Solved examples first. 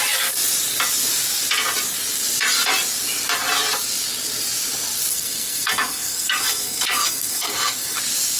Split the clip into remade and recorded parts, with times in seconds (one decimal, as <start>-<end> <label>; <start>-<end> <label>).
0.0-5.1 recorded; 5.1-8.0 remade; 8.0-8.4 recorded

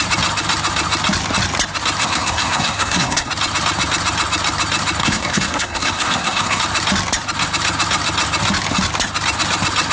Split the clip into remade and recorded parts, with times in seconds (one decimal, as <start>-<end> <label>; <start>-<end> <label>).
0.0-2.0 recorded; 2.0-3.3 remade; 3.3-5.0 recorded; 5.0-6.6 remade; 6.6-9.9 recorded

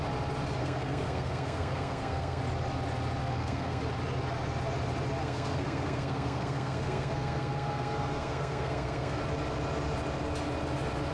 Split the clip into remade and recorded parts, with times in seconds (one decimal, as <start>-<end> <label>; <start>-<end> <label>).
0.0-0.6 recorded; 0.6-2.4 remade; 2.4-3.2 recorded; 3.2-3.8 remade; 3.8-5.2 recorded; 5.2-9.2 remade; 9.2-11.1 recorded

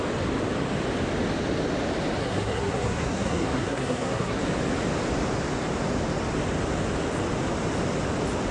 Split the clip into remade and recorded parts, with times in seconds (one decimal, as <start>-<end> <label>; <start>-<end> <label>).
0.0-2.2 recorded; 2.2-4.4 remade; 4.4-8.5 recorded

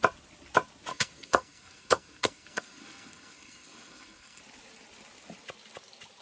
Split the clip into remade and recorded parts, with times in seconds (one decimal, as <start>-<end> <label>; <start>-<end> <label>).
0.0-0.9 recorded; 0.9-4.4 remade; 4.4-6.2 recorded